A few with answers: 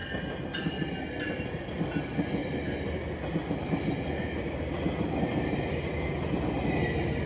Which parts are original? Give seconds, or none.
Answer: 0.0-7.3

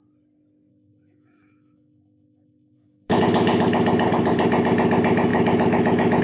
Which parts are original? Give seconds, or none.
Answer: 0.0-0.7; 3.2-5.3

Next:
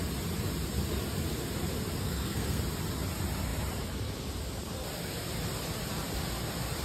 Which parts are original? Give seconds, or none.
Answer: 0.0-2.0; 2.6-6.8

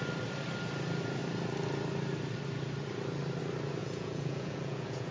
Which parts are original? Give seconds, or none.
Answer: 0.0-3.8